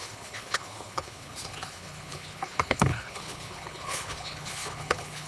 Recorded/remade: remade